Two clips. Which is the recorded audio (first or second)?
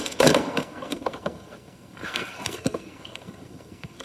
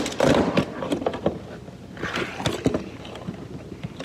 second